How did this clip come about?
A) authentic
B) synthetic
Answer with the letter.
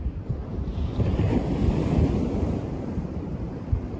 B